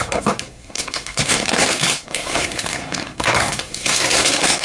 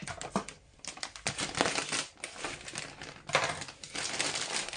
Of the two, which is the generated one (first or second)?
first